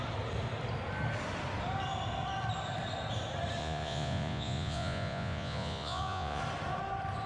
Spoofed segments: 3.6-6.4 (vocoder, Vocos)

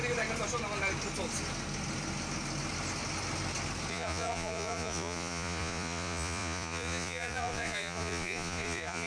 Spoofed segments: 3.9-9.1 (vocoder, Vocos)

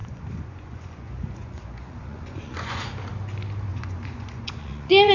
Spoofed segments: 0.0-2.9 (vocoder, Vocos); 3.7-5.1